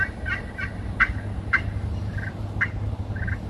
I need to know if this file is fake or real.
real